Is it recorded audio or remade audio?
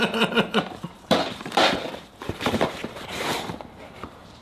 remade